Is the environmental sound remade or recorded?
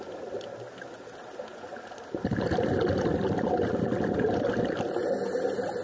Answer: recorded